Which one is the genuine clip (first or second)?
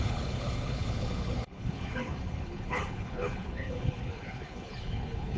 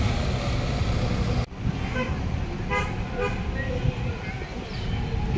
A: second